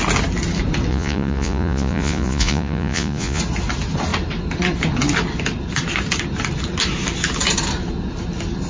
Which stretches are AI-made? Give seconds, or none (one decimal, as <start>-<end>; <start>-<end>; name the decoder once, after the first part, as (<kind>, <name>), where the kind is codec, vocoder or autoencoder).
0.9-3.4 (vocoder, Vocos)